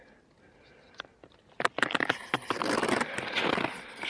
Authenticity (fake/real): real